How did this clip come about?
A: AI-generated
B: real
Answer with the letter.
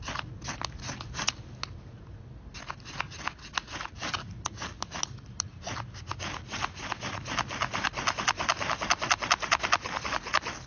B